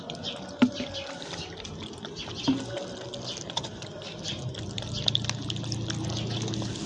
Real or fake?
real